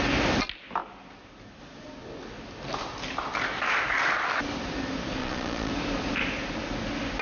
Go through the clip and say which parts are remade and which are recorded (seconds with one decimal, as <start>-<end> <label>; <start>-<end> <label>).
0.0-5.2 recorded; 5.2-5.7 remade; 5.7-7.2 recorded